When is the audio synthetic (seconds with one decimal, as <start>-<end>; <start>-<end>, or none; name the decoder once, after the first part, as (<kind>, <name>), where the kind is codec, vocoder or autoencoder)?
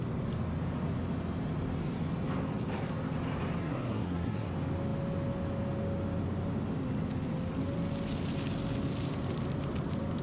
3.6-4.5 (codec, SNAC)